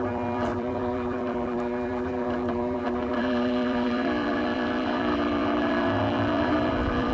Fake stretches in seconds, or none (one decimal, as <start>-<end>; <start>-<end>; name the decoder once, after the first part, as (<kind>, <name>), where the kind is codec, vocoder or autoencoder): 0.0-7.1 (vocoder, BigVGAN v2)